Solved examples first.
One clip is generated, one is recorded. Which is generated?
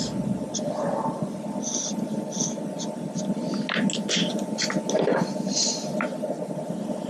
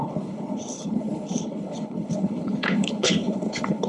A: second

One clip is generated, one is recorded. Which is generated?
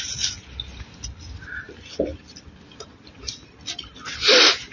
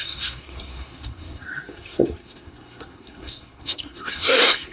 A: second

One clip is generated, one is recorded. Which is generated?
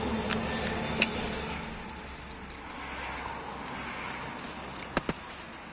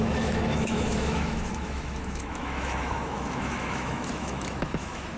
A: second